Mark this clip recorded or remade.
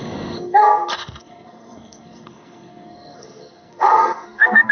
remade